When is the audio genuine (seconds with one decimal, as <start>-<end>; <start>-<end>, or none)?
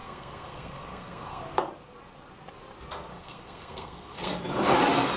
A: 1.4-3.1; 4.3-5.2